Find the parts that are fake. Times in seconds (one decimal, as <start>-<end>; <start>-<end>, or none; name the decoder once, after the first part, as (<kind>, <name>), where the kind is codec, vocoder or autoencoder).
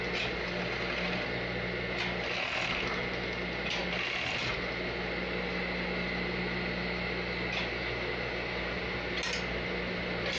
none